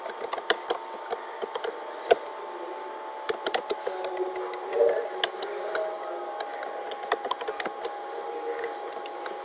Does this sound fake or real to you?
real